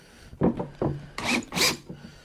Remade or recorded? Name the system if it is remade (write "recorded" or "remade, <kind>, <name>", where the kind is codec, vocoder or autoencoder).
recorded